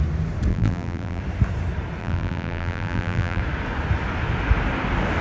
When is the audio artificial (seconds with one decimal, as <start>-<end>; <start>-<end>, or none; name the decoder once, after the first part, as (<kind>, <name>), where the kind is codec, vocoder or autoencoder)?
0.5-1.2 (vocoder, BigVGAN v2); 2.0-3.4